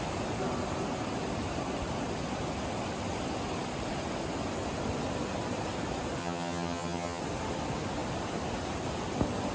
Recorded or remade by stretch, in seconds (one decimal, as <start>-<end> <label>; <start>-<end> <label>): 0.0-6.2 recorded; 6.2-7.2 remade; 7.2-9.5 recorded